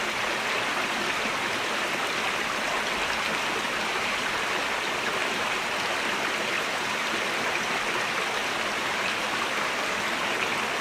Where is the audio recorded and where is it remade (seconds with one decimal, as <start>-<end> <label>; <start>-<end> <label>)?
0.0-10.8 recorded